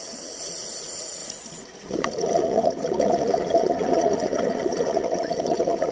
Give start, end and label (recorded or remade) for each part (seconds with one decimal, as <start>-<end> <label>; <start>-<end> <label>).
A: 0.0-5.9 remade